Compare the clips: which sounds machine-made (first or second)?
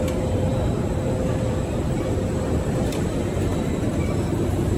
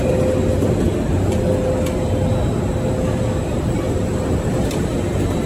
first